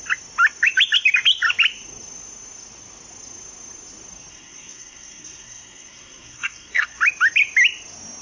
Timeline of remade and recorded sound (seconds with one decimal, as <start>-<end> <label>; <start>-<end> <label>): 0.0-4.3 recorded; 4.3-7.0 remade; 7.0-8.2 recorded